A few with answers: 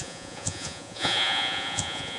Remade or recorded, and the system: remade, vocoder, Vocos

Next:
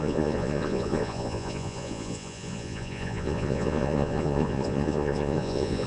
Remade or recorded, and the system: remade, vocoder, Vocos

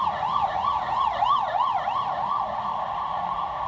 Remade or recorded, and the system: remade, vocoder, Vocos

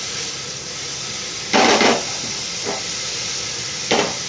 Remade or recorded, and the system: recorded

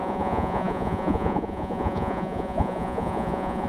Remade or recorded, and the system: remade, vocoder, Vocos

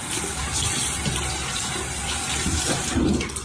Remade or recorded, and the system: recorded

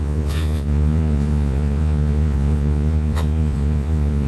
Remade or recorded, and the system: remade, vocoder, Vocos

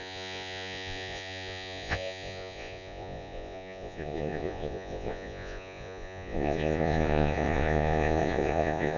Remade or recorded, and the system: remade, vocoder, Vocos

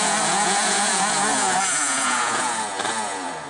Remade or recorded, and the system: remade, vocoder, Vocos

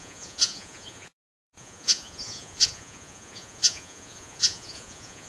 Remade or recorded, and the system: remade, vocoder, Vocos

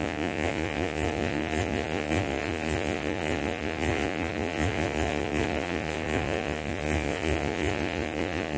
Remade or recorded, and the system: remade, vocoder, Vocos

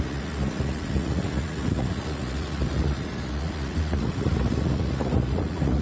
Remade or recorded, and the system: remade, vocoder, Vocos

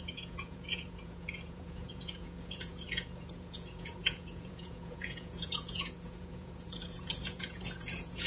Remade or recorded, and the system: remade, vocoder, Vocos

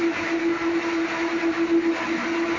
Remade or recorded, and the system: recorded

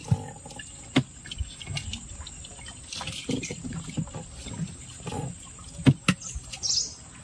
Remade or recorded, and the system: recorded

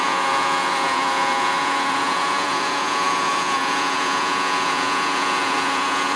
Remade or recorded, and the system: remade, vocoder, Vocos